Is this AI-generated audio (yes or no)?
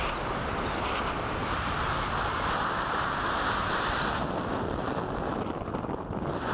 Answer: no